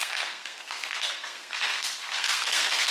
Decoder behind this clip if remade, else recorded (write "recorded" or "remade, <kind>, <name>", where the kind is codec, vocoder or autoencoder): remade, codec, SNAC